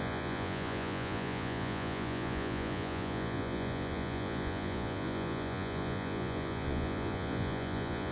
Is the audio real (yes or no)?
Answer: no